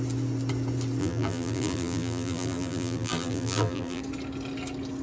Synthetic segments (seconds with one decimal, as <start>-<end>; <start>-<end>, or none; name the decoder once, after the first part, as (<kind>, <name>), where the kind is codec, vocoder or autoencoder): 1.0-4.0 (vocoder, BigVGAN v2)